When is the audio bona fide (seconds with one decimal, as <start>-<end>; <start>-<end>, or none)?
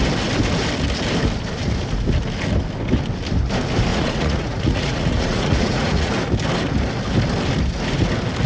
0.0-3.9; 6.1-8.5